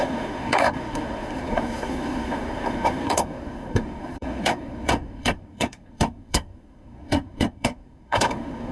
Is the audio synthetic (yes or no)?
yes